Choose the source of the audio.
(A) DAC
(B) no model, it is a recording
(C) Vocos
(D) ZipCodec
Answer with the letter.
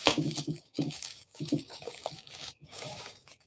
A